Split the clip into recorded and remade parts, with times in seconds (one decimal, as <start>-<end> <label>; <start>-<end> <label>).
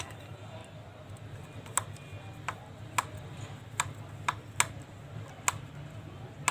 0.0-6.5 recorded